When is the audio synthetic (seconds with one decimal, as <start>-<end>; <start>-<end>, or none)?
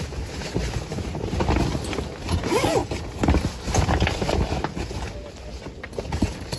0.9-1.4